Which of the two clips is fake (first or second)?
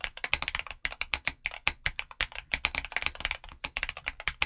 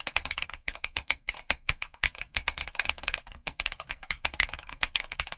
second